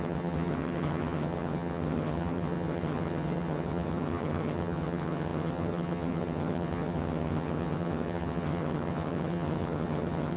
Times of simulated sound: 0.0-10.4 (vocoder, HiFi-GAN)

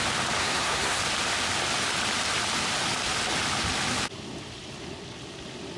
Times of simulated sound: 0.4-1.0 (codec, SNAC)